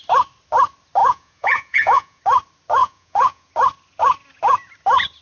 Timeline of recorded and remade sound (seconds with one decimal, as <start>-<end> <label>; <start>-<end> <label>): 0.0-1.0 recorded; 1.0-2.2 remade; 2.2-2.8 recorded; 2.8-3.5 remade; 3.5-5.2 recorded

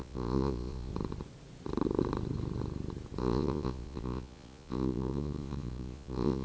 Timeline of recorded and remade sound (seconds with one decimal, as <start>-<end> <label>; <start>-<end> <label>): 0.0-0.9 remade; 0.9-3.2 recorded; 3.2-6.4 remade

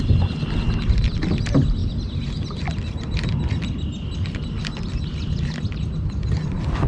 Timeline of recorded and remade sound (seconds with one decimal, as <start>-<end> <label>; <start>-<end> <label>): 0.0-6.9 recorded

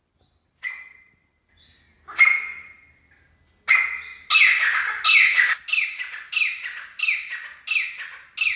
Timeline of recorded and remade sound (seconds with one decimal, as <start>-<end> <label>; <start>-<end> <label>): 0.0-8.6 recorded